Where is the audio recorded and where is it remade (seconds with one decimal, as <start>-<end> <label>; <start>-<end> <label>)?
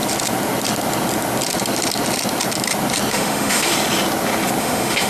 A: 0.0-3.1 recorded; 3.1-3.7 remade; 3.7-4.6 recorded; 4.6-5.1 remade